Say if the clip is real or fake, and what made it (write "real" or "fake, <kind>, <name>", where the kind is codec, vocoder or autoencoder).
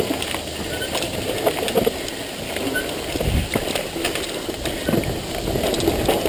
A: real